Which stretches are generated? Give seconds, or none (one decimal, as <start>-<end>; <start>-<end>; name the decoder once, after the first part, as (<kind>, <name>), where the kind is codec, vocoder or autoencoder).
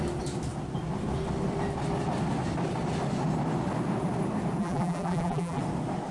4.6-5.6 (vocoder, BigVGAN v2)